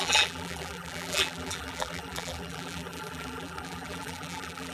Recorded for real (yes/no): no